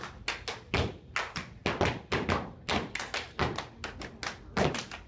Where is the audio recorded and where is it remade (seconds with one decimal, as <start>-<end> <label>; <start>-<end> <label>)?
0.0-5.1 recorded